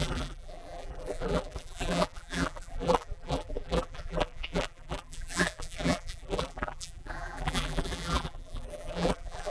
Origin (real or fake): fake